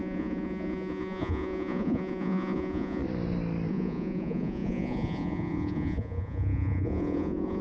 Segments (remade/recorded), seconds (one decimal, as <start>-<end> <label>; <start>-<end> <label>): 0.0-3.0 remade; 3.0-3.7 recorded; 3.7-7.6 remade

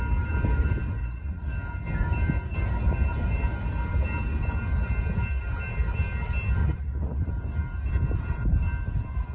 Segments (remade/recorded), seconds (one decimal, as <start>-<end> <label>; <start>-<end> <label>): 0.0-1.0 recorded; 1.0-1.5 remade; 1.5-6.6 recorded; 6.6-7.3 remade; 7.3-9.3 recorded

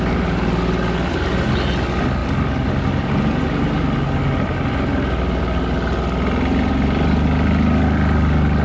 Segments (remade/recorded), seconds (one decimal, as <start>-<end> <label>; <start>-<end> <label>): 0.0-8.6 recorded

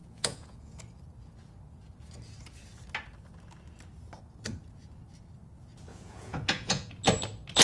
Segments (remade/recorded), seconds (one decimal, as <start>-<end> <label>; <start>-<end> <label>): 0.0-0.8 remade; 0.8-5.9 recorded; 5.9-6.9 remade; 6.9-7.6 recorded

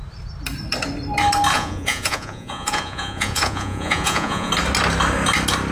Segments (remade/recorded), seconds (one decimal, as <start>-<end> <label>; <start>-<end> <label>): 0.0-1.5 recorded; 1.5-4.5 remade; 4.5-5.7 recorded

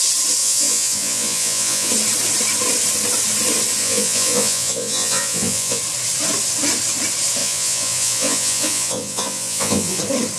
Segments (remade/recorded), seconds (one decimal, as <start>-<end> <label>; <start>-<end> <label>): 0.0-0.4 recorded; 0.4-1.9 remade; 1.9-3.8 recorded; 3.8-5.8 remade; 5.8-7.4 recorded; 7.4-10.0 remade; 10.0-10.4 recorded

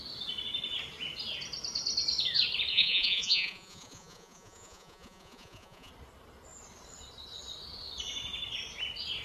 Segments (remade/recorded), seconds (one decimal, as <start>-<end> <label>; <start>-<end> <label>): 0.0-2.7 recorded; 2.7-5.9 remade; 5.9-9.2 recorded

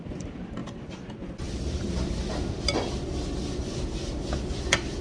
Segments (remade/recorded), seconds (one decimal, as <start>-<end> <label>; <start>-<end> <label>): 0.0-5.0 recorded